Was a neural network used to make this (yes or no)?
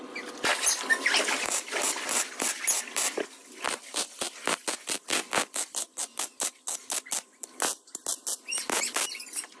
no